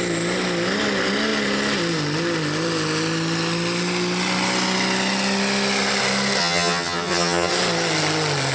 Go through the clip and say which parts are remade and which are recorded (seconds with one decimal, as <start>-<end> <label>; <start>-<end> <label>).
0.0-6.4 recorded; 6.4-7.5 remade; 7.5-8.5 recorded

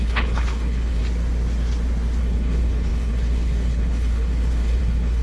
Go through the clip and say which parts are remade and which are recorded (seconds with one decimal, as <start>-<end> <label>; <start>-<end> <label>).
0.0-1.0 remade; 1.0-2.2 recorded; 2.2-5.2 remade

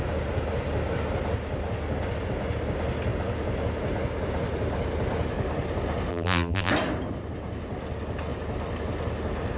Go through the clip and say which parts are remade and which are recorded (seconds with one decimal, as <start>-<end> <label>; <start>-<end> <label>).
0.0-6.1 recorded; 6.1-6.7 remade; 6.7-9.6 recorded